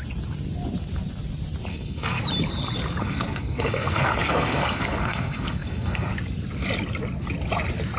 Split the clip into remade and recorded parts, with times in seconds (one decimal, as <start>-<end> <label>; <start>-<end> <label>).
0.0-1.7 recorded; 1.7-2.2 remade; 2.2-3.0 recorded; 3.0-6.1 remade; 6.1-8.0 recorded